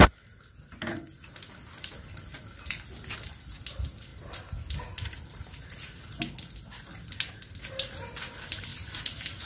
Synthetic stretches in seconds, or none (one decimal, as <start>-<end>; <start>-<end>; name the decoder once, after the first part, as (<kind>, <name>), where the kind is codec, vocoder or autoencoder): 4.1-4.8 (vocoder, BigVGAN v2); 8.7-9.5